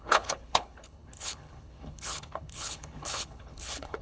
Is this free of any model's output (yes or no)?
no